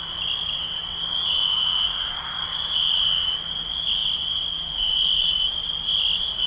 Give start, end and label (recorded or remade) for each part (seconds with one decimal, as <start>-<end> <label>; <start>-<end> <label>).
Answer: 0.0-6.5 recorded